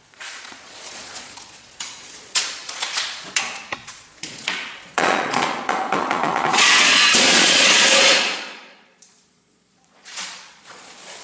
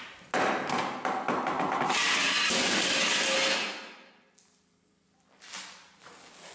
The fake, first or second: first